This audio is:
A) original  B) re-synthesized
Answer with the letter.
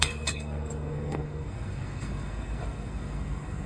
B